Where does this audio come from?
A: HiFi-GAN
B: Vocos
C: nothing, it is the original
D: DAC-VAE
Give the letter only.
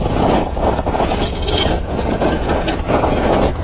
B